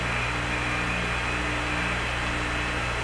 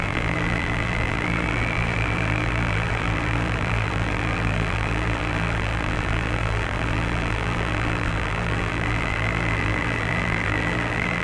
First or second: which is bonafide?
first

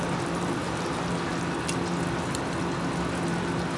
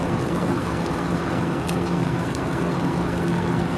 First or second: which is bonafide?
first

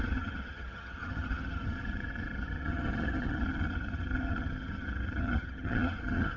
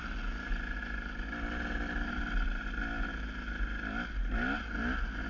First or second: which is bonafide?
second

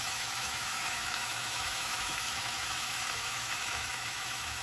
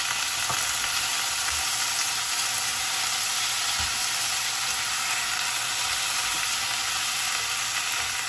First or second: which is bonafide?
second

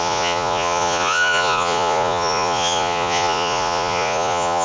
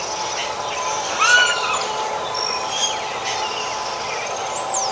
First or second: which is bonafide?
second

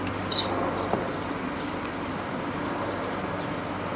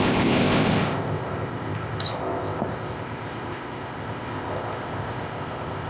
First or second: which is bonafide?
first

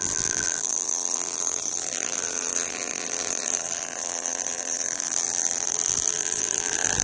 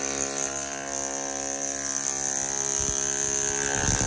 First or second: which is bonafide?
second